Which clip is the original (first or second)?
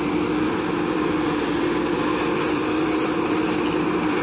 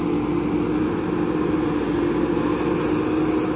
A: second